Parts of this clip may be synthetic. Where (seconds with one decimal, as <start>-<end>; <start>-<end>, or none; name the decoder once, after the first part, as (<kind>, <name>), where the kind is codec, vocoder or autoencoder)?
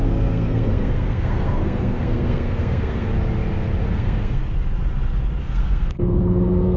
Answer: 0.0-3.1 (codec, SNAC); 3.8-4.4; 5.4-6.8